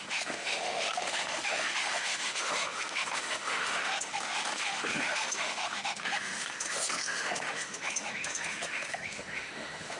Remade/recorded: remade